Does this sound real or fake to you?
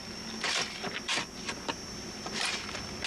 real